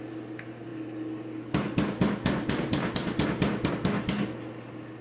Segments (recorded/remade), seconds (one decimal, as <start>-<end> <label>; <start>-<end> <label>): 0.0-5.0 recorded